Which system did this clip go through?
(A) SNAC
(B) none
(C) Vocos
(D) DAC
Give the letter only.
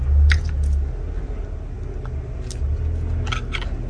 B